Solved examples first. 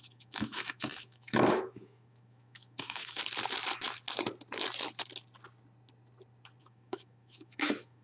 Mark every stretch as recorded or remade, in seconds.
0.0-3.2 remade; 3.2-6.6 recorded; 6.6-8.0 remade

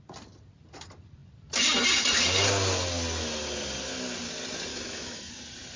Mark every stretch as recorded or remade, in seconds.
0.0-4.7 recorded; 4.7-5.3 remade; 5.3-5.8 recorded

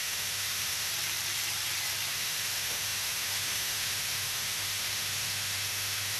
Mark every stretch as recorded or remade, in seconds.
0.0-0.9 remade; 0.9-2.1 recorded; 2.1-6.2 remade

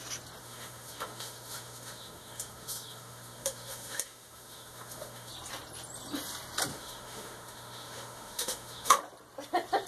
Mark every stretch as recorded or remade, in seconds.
0.0-0.4 recorded; 0.4-5.3 remade; 5.3-6.7 recorded; 6.7-9.0 remade; 9.0-9.9 recorded

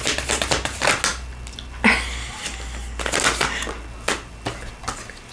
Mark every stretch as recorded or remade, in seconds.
0.0-5.3 recorded

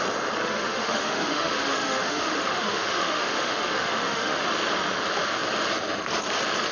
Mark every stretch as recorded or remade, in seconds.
0.0-0.4 recorded; 0.4-4.4 remade; 4.4-6.7 recorded